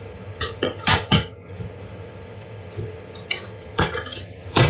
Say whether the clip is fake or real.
fake